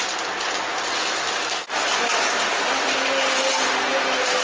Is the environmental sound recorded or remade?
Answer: recorded